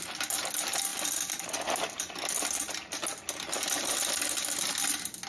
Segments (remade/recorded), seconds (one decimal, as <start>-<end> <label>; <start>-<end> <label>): 0.0-5.3 recorded